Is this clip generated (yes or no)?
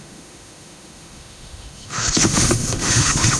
yes